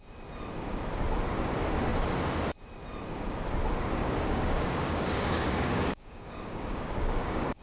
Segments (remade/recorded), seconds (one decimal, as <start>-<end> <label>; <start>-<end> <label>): 0.0-4.0 recorded; 4.0-7.6 remade